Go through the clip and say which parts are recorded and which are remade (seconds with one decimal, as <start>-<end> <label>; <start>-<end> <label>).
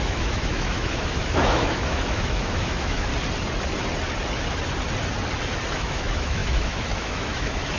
0.0-3.1 remade; 3.1-5.7 recorded; 5.7-7.8 remade